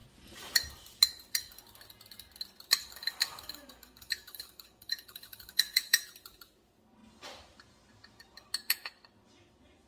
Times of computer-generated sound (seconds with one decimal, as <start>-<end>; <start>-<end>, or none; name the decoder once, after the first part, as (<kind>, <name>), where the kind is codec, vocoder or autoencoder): 2.8-6.0 (codec, DAC)